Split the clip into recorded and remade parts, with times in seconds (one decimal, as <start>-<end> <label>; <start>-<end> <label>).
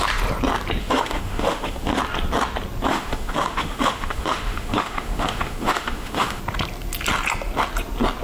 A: 0.0-0.8 recorded; 0.8-2.0 remade; 2.0-2.9 recorded; 2.9-6.4 remade; 6.4-8.2 recorded